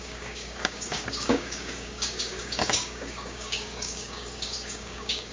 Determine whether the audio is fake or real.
fake